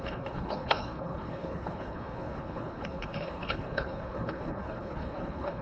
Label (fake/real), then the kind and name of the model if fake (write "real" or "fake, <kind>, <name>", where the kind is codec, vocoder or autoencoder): fake, codec, HILCodec